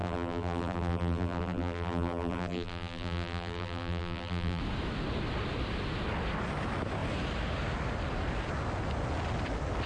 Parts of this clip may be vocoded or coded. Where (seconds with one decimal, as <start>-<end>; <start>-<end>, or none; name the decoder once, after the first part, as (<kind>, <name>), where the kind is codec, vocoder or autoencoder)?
0.0-4.6 (vocoder, BigVGAN v2)